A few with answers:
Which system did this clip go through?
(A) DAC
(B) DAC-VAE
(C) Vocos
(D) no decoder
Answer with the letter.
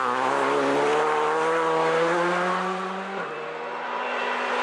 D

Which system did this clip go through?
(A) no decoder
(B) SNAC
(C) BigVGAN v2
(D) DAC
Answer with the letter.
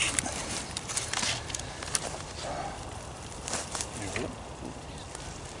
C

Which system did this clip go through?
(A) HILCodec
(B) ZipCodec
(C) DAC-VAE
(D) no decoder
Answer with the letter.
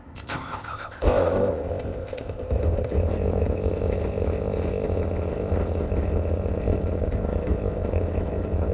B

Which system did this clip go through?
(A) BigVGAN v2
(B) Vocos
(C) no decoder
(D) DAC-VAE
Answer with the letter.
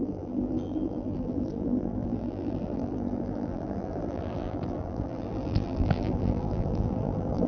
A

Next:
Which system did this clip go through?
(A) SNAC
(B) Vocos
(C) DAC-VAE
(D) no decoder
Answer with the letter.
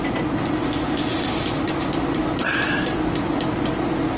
D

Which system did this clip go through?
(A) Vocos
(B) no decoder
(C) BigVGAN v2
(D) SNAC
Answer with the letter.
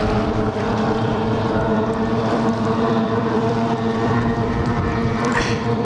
C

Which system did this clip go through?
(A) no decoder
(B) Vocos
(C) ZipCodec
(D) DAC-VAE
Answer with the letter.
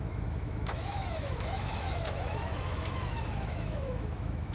D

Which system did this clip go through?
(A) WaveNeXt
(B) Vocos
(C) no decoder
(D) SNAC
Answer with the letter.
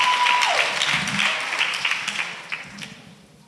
C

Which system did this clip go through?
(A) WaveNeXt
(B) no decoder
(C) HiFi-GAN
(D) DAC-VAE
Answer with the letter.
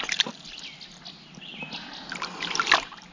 B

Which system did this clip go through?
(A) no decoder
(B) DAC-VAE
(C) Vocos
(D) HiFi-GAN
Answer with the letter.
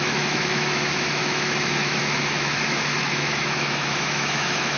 B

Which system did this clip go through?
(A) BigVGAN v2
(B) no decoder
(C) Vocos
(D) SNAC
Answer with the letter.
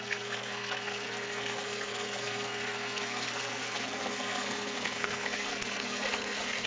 D